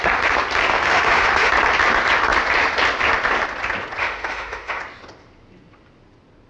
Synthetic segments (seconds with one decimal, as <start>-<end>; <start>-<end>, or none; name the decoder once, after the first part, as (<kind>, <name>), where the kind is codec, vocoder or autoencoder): 0.7-1.5 (autoencoder, DAC-VAE); 4.0-4.8